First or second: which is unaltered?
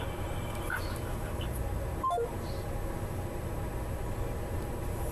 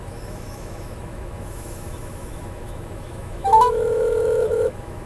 first